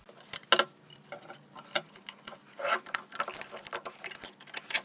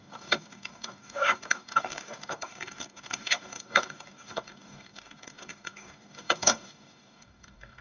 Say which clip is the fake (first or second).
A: second